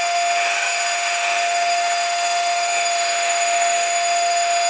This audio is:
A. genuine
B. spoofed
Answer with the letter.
B